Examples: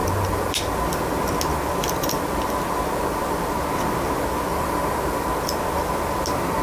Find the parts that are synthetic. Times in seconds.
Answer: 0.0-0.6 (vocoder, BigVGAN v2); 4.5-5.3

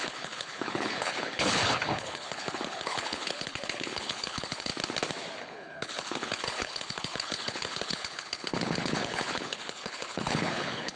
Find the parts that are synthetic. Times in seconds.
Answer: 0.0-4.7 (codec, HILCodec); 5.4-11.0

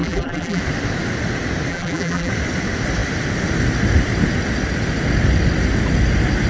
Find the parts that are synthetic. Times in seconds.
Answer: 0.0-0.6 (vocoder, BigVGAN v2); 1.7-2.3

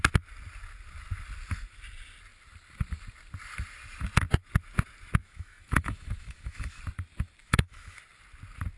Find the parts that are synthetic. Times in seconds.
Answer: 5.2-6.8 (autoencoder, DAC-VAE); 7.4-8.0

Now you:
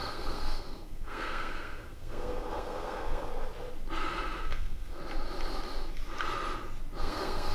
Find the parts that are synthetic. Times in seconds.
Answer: 0.0-3.3 (codec, SNAC); 4.4-5.0; 7.0-7.5